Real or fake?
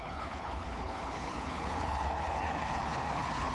fake